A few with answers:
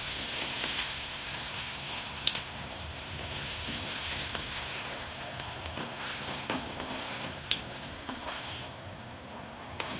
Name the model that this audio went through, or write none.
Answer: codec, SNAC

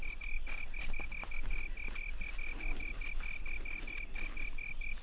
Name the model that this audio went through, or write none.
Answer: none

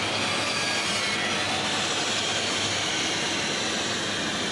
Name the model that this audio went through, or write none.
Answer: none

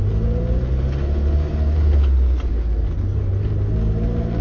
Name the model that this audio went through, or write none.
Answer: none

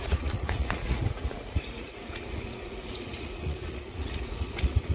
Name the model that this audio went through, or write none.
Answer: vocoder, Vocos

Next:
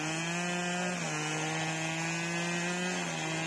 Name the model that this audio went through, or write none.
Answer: none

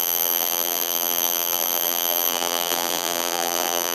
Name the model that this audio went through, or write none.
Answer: vocoder, BigVGAN v2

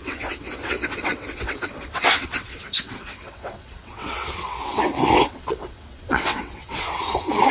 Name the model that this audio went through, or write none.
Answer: vocoder, WaveNeXt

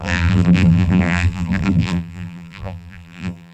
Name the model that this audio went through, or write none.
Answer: vocoder, BigVGAN v2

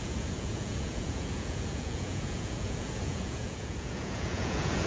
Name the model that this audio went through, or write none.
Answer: vocoder, Vocos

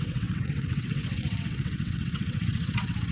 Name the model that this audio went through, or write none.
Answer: vocoder, WaveNeXt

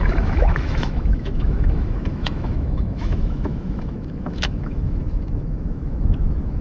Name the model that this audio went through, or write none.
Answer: autoencoder, DAC-VAE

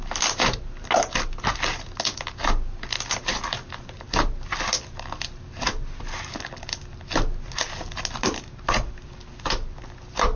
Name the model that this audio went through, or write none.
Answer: none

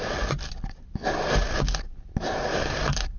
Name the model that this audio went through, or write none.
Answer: none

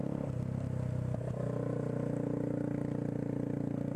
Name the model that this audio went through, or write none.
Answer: none